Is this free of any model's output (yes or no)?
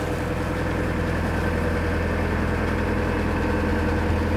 yes